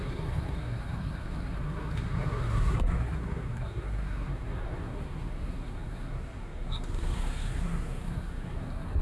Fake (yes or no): yes